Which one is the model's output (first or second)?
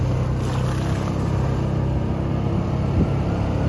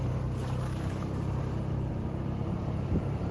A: second